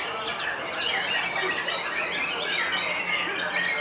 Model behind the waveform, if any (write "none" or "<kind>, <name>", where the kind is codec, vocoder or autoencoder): none